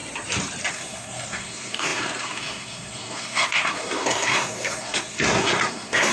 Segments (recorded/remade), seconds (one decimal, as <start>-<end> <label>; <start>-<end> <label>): 0.0-0.7 recorded; 0.7-6.1 remade